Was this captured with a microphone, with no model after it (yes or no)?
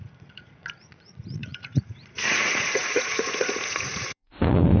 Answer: no